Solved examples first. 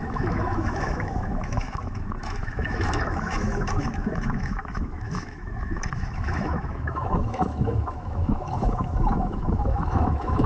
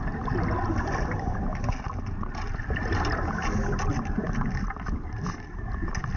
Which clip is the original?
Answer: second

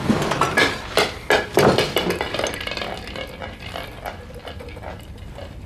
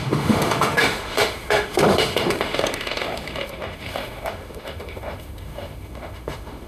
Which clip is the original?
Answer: first